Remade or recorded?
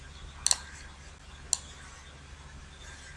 recorded